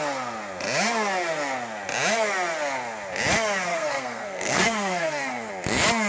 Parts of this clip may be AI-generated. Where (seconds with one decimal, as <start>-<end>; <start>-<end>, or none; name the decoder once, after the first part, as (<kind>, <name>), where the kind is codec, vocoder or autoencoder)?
3.7-5.5 (codec, SNAC)